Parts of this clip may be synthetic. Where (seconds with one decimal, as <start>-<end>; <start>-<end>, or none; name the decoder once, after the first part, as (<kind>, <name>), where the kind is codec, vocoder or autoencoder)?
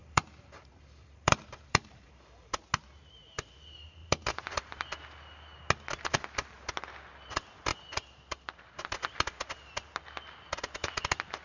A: 0.0-2.1 (vocoder, BigVGAN v2); 4.0-4.8; 7.7-8.7